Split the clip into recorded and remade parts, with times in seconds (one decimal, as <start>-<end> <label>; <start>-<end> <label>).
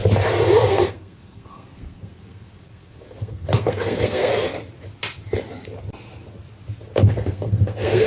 0.0-0.7 recorded; 0.7-4.3 remade; 4.3-7.1 recorded; 7.1-8.1 remade